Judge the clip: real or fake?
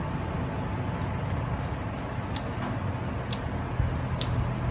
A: real